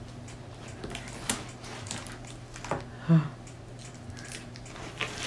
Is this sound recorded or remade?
recorded